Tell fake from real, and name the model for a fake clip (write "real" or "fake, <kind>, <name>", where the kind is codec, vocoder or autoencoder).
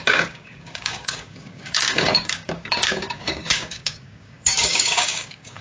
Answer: fake, codec, DAC